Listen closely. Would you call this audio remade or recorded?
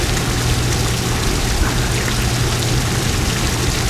recorded